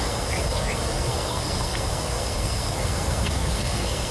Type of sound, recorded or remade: remade